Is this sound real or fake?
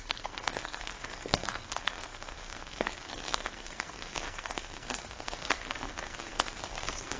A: fake